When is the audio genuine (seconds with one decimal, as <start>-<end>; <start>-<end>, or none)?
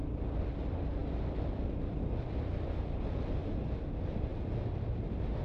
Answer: 0.0-5.4